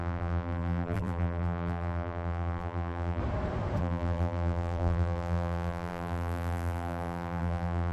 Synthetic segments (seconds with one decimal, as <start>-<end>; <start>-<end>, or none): 0.0-3.2; 3.8-7.9